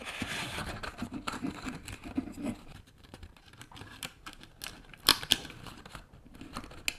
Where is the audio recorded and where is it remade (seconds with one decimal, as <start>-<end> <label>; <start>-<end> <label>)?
0.0-0.6 recorded; 0.6-4.1 remade; 4.1-5.1 recorded; 5.1-6.1 remade; 6.1-7.0 recorded